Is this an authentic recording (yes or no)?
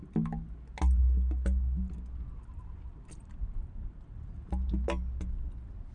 yes